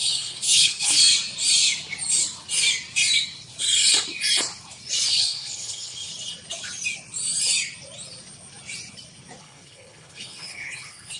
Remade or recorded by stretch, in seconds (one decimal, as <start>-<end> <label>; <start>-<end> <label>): 0.0-1.0 remade; 1.0-5.1 recorded; 5.1-6.1 remade; 6.1-9.4 recorded; 9.4-11.2 remade